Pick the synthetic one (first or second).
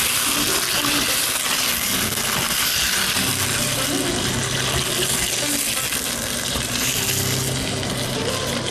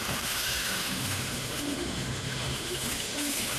second